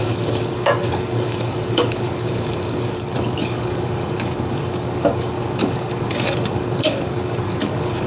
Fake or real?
fake